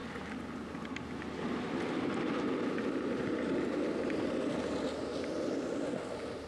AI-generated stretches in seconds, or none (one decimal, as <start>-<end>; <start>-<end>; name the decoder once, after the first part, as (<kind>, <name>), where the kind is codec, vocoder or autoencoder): none